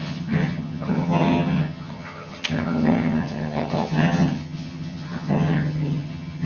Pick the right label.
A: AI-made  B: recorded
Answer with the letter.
A